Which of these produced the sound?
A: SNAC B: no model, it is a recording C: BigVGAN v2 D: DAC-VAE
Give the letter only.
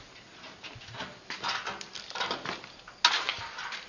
B